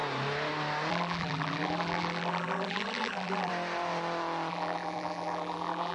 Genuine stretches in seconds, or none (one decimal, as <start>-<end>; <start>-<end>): 0.0-0.9; 3.5-4.5